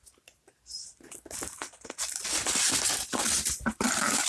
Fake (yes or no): no